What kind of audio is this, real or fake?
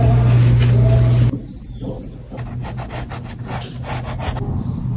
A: real